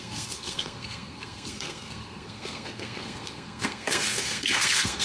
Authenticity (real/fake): fake